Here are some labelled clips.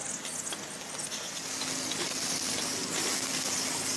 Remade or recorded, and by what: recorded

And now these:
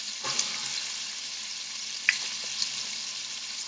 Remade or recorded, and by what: recorded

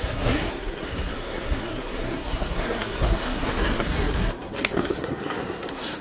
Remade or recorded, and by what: remade, codec, SNAC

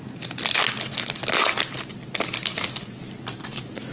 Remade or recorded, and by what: recorded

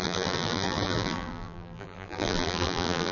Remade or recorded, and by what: remade, vocoder, BigVGAN v2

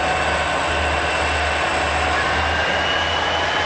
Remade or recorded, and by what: recorded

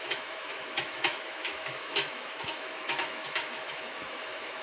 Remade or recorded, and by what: remade, autoencoder, DAC-VAE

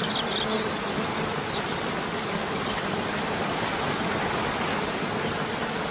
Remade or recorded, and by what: recorded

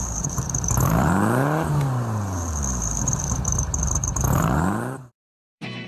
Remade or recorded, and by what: remade, vocoder, BigVGAN v2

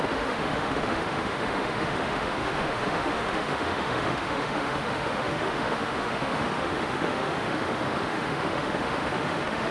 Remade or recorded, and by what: remade, autoencoder, DAC-VAE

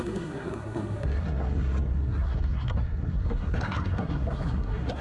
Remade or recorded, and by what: remade, codec, SNAC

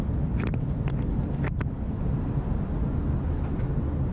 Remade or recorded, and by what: recorded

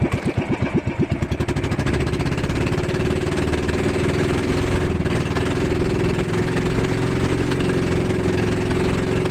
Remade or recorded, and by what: recorded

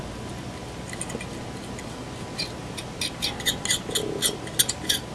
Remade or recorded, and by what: recorded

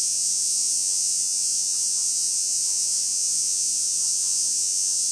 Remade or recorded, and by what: remade, vocoder, Vocos